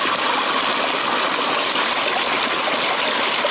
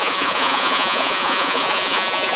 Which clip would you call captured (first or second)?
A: first